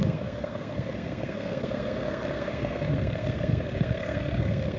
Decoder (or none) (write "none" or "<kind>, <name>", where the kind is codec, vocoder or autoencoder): codec, SNAC